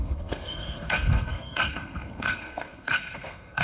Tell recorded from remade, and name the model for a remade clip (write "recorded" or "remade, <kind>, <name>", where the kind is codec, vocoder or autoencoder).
remade, codec, SNAC